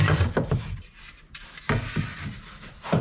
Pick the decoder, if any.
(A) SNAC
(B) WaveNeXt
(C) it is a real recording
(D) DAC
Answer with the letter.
C